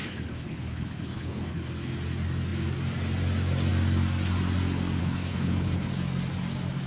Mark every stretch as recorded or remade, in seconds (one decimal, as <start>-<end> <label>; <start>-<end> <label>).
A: 0.0-1.7 remade; 1.7-5.0 recorded; 5.0-5.9 remade; 5.9-6.9 recorded